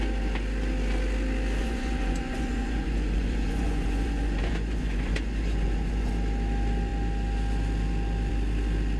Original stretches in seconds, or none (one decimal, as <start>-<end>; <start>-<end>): 0.0-1.6; 6.1-9.0